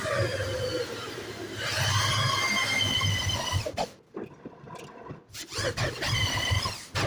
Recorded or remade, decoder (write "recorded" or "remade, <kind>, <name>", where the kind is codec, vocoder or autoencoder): recorded